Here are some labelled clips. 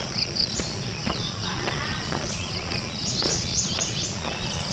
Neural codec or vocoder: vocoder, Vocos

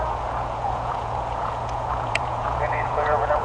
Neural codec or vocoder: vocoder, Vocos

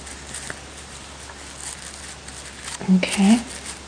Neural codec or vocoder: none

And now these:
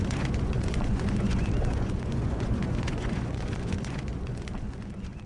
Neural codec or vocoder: vocoder, Vocos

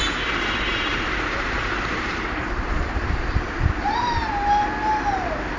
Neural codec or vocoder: vocoder, BigVGAN v2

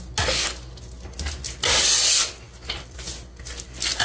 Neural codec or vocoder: none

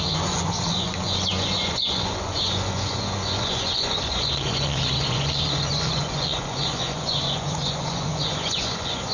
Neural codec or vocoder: vocoder, Vocos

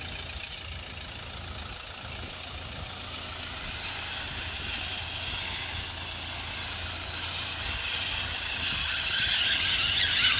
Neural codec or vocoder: none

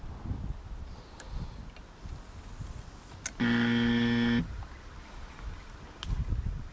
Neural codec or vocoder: none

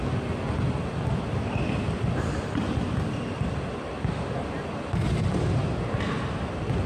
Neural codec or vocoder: none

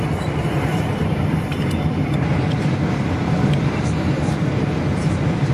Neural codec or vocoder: vocoder, BigVGAN v2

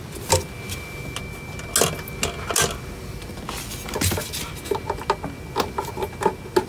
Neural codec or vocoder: none